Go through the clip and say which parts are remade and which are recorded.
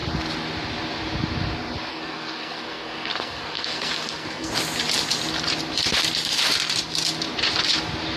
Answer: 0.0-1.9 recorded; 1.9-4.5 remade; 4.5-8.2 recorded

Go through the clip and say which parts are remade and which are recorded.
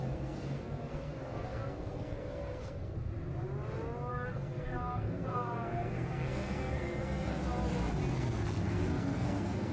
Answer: 0.0-3.1 remade; 3.1-4.1 recorded; 4.1-7.4 remade; 7.4-8.1 recorded; 8.1-9.7 remade